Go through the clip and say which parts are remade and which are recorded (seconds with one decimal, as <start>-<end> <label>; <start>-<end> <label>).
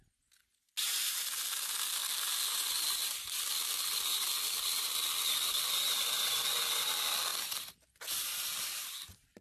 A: 0.0-9.4 recorded